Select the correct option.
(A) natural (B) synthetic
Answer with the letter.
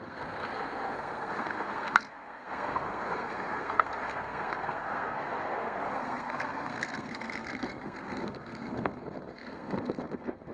B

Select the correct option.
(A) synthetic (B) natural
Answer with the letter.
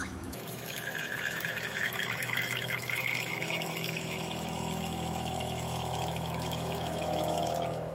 A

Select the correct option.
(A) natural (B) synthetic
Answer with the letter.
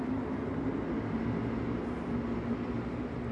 A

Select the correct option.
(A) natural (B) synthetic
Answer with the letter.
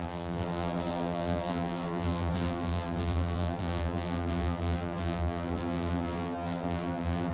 B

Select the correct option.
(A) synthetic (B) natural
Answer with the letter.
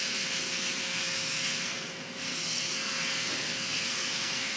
A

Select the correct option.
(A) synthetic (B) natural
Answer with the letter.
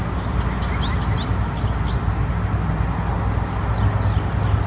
B